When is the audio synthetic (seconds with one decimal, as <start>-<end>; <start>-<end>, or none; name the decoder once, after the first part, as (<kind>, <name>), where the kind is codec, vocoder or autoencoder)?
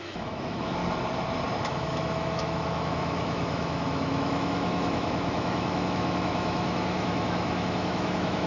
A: 0.0-0.8 (autoencoder, DAC-VAE); 1.6-8.5